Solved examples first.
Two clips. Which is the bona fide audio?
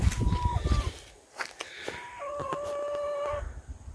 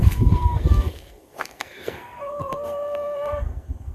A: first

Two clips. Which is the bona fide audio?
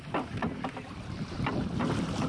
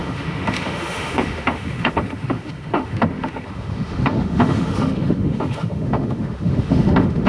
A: first